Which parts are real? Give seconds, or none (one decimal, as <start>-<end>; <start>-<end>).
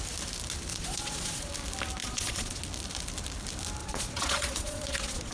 0.0-0.7; 1.5-2.0; 2.6-3.8